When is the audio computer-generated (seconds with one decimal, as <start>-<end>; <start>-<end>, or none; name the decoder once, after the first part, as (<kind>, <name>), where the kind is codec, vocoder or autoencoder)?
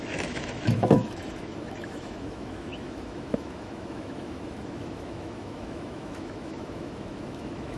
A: 0.0-7.8 (autoencoder, DAC-VAE)